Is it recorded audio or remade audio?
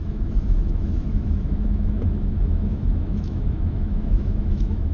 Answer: remade